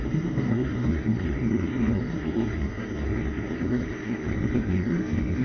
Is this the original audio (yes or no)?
no